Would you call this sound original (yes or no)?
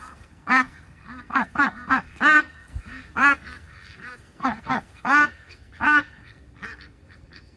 no